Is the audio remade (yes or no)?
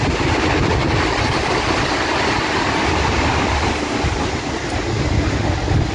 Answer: no